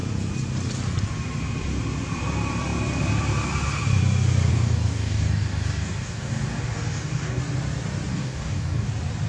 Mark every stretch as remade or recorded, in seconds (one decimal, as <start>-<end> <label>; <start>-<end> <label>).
0.0-4.5 recorded; 4.5-7.4 remade; 7.4-8.1 recorded; 8.1-8.9 remade; 8.9-9.3 recorded